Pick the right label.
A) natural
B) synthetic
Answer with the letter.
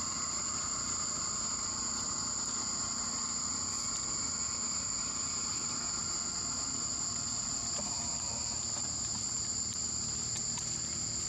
A